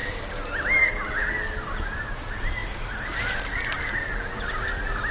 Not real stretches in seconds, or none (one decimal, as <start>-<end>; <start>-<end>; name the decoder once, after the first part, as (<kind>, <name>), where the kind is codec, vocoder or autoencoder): none